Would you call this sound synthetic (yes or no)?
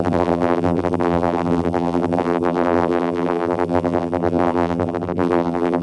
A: yes